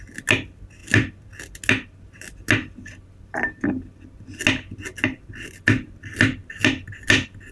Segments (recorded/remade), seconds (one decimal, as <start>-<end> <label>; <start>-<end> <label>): 0.0-7.5 recorded